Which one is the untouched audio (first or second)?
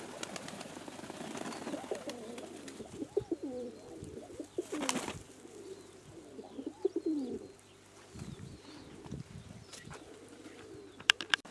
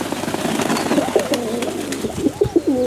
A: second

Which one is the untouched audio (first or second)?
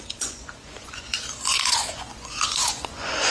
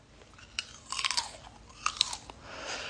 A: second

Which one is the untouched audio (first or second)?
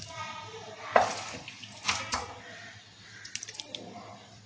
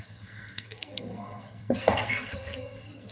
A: first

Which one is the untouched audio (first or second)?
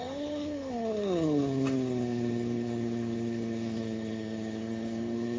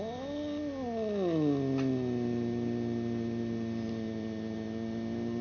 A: second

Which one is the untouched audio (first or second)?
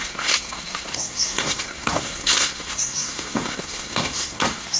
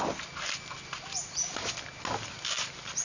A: second